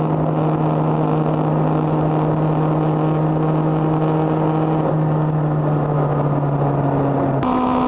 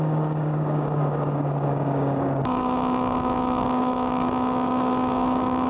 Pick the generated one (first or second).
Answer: second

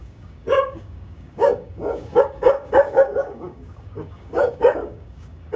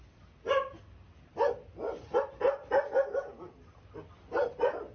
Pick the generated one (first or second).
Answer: first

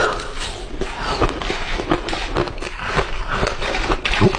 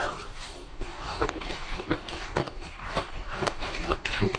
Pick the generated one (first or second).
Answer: second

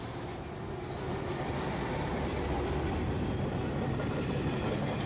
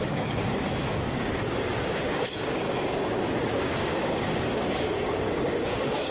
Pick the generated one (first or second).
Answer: second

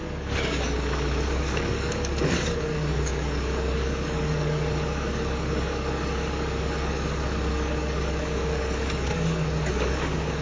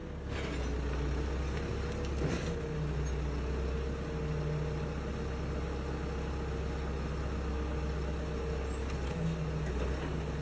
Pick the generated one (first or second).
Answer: first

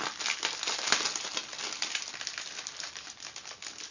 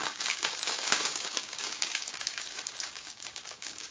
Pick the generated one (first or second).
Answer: second